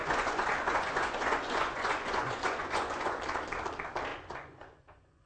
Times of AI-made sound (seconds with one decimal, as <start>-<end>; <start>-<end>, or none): 0.0-3.2; 4.1-5.3